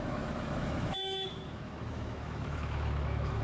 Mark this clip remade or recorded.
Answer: remade